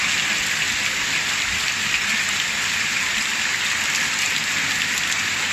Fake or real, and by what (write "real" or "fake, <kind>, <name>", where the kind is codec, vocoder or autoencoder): real